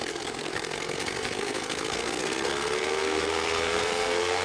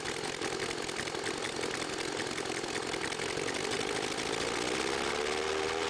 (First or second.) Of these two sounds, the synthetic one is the first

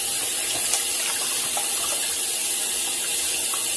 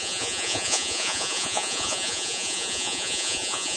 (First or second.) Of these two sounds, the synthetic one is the second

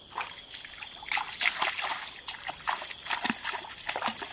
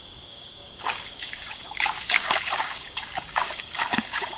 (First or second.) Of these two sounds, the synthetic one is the second